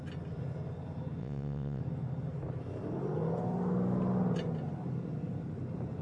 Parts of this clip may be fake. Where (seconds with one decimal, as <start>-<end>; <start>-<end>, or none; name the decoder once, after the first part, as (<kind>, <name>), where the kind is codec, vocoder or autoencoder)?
1.2-1.8 (vocoder, WaveNeXt)